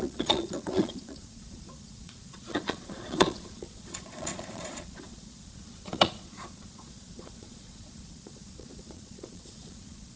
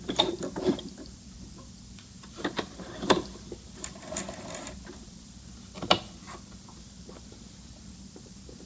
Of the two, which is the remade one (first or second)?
first